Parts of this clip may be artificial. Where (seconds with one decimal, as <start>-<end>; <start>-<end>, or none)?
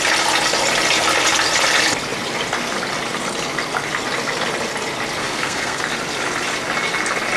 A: 5.2-5.8